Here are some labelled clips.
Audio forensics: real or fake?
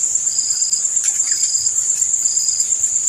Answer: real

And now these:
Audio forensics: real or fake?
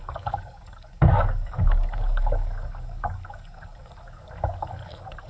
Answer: fake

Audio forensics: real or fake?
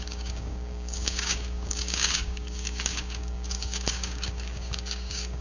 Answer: fake